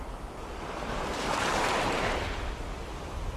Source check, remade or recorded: recorded